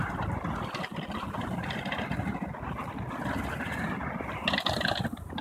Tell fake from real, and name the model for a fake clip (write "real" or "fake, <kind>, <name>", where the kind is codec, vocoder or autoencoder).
real